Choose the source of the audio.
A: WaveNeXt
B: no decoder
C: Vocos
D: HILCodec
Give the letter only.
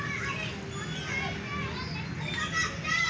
B